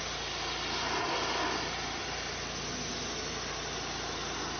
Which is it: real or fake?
real